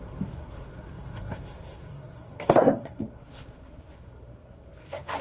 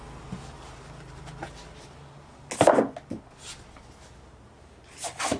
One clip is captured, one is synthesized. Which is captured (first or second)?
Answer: second